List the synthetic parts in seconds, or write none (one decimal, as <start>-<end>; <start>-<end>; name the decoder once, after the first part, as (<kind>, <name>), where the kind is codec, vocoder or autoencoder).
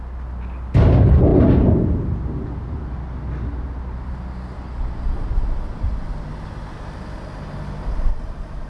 8.1-8.7 (vocoder, BigVGAN v2)